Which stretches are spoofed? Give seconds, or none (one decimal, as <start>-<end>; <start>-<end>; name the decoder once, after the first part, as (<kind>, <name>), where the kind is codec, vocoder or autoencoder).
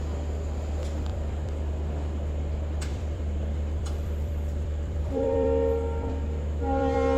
1.1-1.7 (vocoder, BigVGAN v2); 2.9-7.2